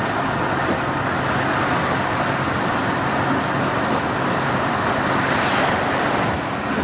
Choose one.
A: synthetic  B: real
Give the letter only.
B